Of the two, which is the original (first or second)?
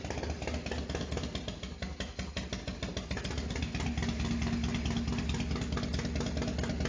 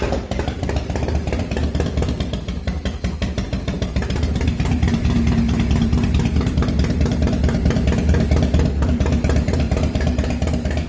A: first